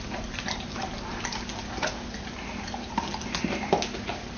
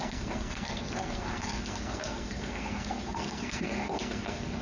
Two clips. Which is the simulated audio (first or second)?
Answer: second